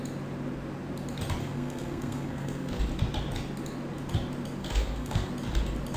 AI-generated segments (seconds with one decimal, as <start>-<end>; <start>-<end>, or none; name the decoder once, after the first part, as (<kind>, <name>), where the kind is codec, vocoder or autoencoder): 1.4-2.8 (codec, SNAC); 4.6-5.3